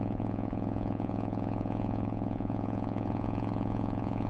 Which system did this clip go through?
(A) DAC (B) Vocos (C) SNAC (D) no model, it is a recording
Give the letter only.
B